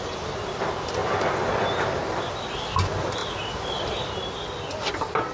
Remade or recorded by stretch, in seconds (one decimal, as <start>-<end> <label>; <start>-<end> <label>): 0.0-5.3 recorded

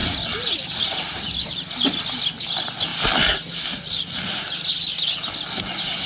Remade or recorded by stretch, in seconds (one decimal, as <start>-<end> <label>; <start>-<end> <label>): 0.0-6.1 recorded

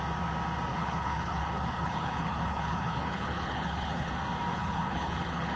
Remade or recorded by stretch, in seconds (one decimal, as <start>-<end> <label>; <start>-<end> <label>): 0.0-0.7 recorded; 0.7-4.1 remade; 4.1-4.5 recorded; 4.5-5.6 remade

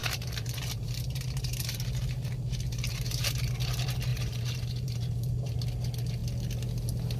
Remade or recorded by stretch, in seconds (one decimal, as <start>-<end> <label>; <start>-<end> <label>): 0.0-3.5 remade; 3.5-4.1 recorded; 4.1-5.6 remade; 5.6-7.2 recorded